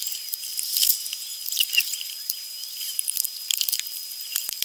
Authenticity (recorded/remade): remade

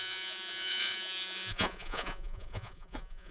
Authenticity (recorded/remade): remade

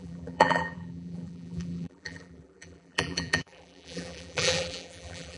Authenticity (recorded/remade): remade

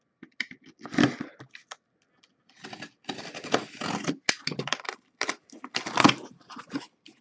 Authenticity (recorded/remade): recorded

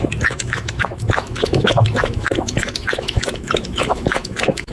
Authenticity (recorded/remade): remade